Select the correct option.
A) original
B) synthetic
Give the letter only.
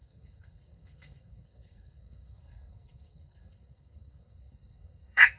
B